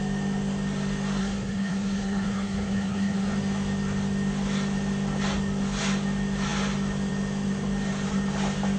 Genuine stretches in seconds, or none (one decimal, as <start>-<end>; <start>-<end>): 0.0-1.2; 3.3-8.8